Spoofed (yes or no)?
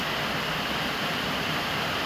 no